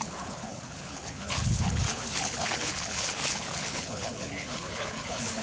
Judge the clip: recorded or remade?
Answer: remade